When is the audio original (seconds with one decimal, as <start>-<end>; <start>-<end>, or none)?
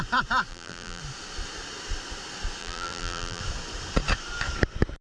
0.0-0.5; 1.0-2.6; 3.4-5.0